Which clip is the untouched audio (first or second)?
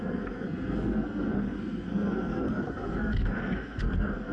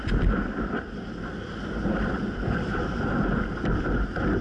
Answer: second